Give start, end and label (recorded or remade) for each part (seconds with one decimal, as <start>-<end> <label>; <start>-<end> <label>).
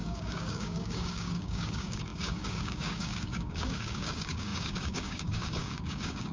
0.0-6.3 remade